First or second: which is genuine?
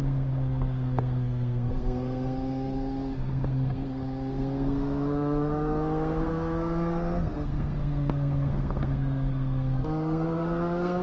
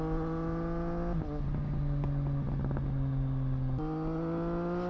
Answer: second